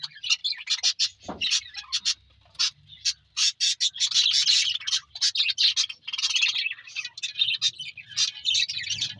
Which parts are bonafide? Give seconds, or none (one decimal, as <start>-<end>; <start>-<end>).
0.0-9.2